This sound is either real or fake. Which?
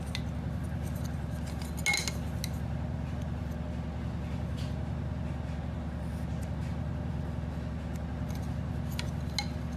real